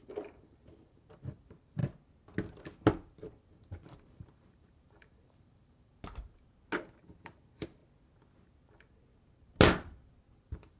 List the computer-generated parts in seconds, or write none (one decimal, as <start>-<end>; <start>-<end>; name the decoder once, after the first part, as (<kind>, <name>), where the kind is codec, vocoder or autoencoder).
0.0-1.8 (vocoder, BigVGAN v2); 3.5-5.9; 7.0-7.8; 10.4-10.8